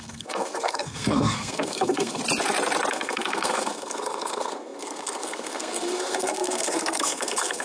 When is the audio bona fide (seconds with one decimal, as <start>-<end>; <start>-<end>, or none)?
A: 2.2-2.9